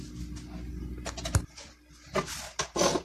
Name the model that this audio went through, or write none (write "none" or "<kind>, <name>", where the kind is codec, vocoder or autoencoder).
none